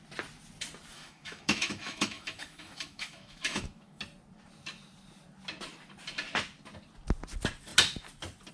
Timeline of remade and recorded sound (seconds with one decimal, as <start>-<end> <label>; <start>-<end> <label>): 0.0-0.9 recorded; 0.9-4.0 remade; 4.0-8.5 recorded